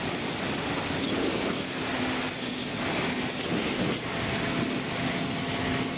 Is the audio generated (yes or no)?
no